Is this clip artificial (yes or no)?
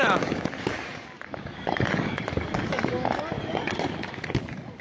yes